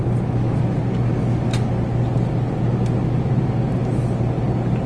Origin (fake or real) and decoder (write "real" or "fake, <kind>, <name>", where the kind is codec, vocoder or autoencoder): real